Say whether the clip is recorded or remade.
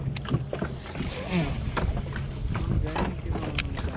recorded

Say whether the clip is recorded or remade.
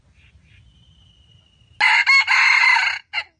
recorded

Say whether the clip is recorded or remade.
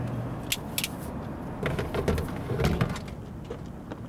recorded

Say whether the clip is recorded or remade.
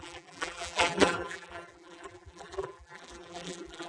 remade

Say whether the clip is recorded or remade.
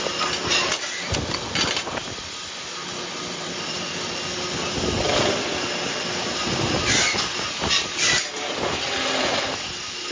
recorded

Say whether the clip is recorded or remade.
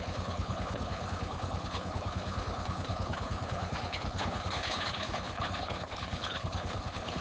remade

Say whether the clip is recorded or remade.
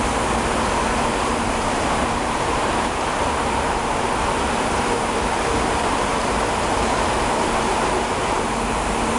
remade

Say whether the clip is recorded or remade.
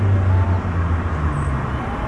recorded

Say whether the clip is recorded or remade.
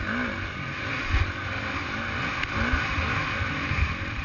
recorded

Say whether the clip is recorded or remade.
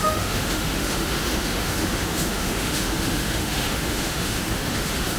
remade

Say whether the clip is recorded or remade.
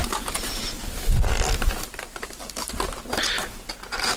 recorded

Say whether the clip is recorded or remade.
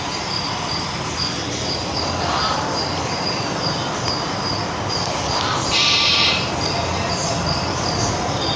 remade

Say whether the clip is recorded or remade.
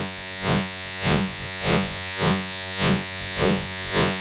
remade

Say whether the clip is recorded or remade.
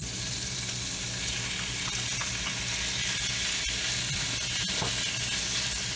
recorded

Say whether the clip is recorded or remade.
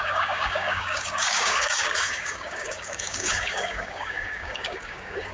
remade